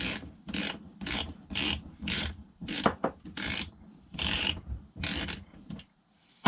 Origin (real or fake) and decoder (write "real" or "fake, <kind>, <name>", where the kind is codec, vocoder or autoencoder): fake, vocoder, BigVGAN v2